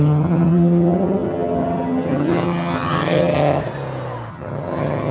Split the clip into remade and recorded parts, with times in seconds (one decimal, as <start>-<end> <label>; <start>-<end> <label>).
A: 0.0-3.6 remade; 3.6-4.3 recorded; 4.3-5.1 remade